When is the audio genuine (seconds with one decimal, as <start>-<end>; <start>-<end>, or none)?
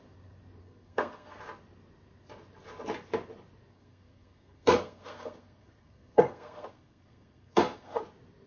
0.0-0.6; 1.4-3.7; 8.0-8.5